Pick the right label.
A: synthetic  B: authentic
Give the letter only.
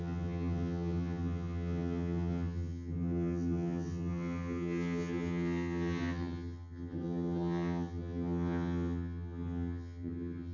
A